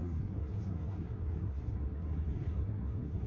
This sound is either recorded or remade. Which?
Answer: remade